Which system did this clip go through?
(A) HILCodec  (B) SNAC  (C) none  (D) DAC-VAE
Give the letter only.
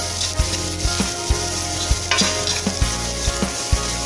C